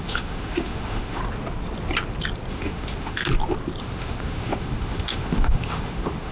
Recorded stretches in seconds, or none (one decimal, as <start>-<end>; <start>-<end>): 1.2-2.5; 3.2-3.8